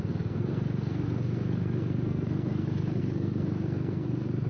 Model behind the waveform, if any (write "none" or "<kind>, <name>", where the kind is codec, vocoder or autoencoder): codec, SNAC